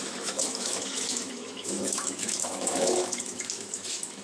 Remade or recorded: remade